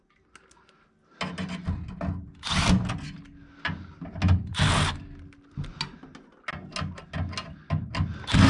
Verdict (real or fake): real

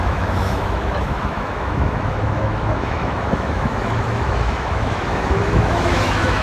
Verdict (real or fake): fake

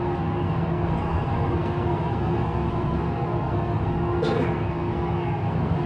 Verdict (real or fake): fake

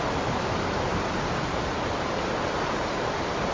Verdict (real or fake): real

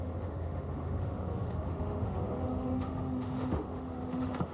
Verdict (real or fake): fake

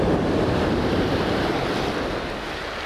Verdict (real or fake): real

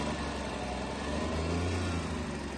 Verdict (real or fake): real